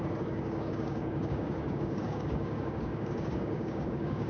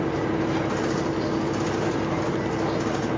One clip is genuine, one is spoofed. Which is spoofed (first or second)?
first